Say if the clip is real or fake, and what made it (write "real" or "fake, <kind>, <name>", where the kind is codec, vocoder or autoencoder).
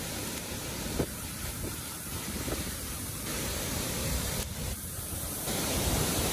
fake, vocoder, BigVGAN v2